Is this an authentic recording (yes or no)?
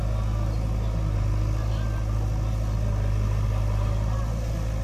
yes